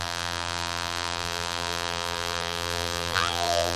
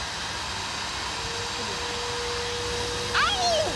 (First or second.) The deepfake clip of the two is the first